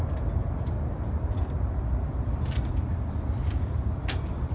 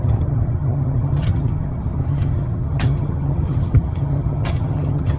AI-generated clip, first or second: second